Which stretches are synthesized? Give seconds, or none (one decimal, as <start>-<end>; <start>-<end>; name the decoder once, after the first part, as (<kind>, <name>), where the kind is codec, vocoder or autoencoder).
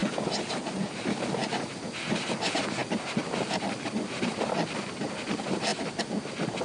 none